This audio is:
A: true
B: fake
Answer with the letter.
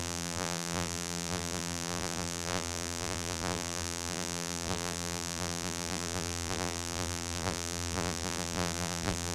B